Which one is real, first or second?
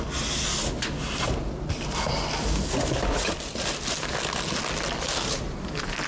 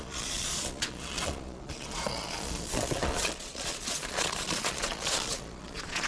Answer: first